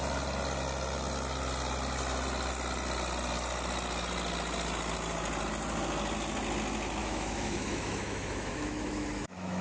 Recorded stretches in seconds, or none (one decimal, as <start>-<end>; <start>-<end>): 0.0-7.0